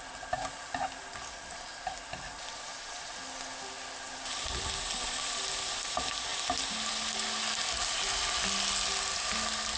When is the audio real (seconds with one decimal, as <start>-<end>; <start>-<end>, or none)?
0.0-9.8